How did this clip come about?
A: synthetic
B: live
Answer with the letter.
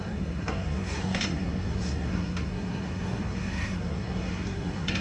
A